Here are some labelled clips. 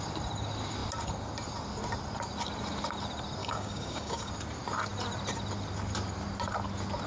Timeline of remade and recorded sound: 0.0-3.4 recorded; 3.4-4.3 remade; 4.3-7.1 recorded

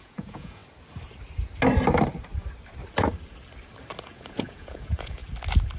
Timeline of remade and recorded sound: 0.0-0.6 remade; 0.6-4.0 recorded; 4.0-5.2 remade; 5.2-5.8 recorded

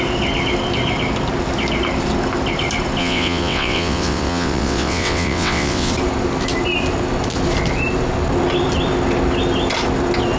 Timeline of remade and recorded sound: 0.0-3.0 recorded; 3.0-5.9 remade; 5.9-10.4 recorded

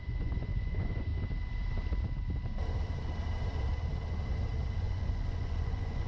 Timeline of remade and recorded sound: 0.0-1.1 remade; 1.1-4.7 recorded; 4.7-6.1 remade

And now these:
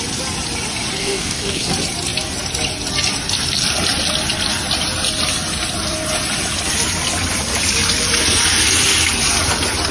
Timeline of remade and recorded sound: 0.0-1.0 recorded; 1.0-1.7 remade; 1.7-9.9 recorded

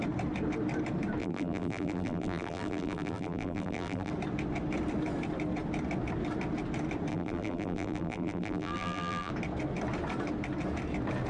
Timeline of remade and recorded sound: 0.0-1.2 recorded; 1.2-4.1 remade; 4.1-7.1 recorded; 7.1-9.3 remade; 9.3-11.3 recorded

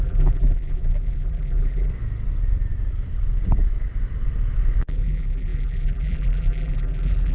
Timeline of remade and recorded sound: 0.0-1.9 remade; 1.9-4.8 recorded; 4.8-7.3 remade